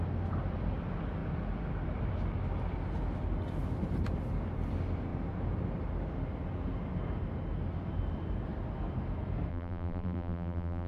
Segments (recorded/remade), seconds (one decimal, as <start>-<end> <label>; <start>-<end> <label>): 0.0-9.5 recorded; 9.5-10.9 remade